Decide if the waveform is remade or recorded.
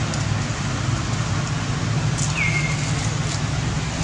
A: recorded